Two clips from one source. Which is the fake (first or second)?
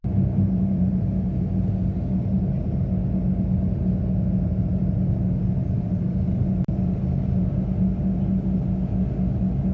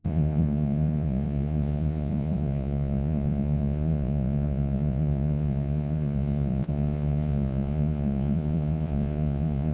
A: second